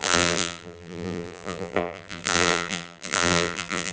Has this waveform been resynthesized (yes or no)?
yes